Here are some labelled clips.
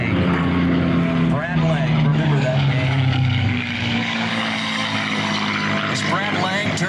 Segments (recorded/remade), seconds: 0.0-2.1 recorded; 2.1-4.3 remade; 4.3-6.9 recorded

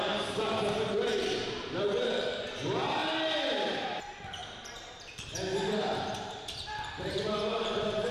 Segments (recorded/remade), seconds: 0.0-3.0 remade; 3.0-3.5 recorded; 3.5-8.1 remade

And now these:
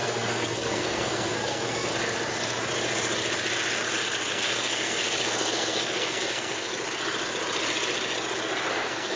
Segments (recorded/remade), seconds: 0.0-1.9 remade; 1.9-4.3 recorded; 4.3-6.7 remade; 6.7-8.7 recorded; 8.7-9.2 remade

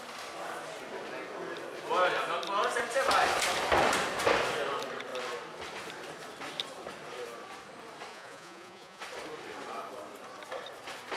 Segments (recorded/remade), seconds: 0.0-8.1 recorded; 8.1-9.0 remade; 9.0-11.2 recorded